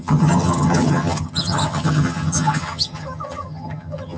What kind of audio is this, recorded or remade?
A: remade